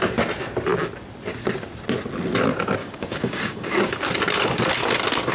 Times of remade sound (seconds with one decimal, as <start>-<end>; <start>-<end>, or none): 2.8-3.9